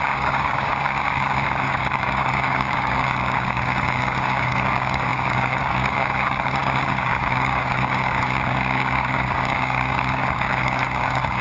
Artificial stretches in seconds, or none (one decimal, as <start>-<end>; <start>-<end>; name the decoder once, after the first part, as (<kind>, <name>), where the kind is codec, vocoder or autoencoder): 0.0-11.4 (codec, DAC)